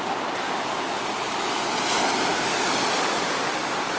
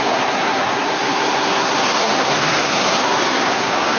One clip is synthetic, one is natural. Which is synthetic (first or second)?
second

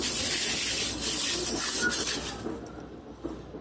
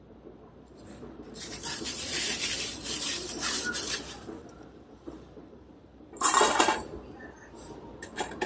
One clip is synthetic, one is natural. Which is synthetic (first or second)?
second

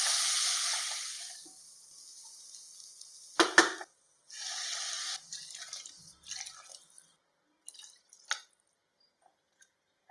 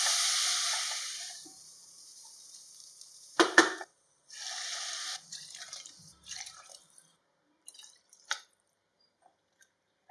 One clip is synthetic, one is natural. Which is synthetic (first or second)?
second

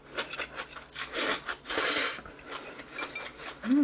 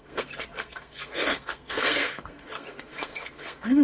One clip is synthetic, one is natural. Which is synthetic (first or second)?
second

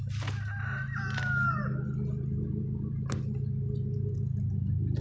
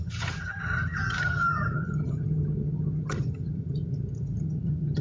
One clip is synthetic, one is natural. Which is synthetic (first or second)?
second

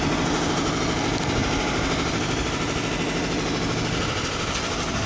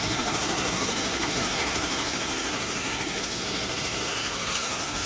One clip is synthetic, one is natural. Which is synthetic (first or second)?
second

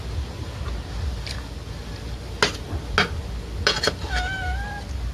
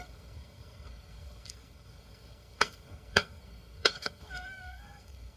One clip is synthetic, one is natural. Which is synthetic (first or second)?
second